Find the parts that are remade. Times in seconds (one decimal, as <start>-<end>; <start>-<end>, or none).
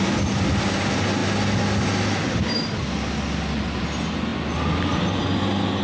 none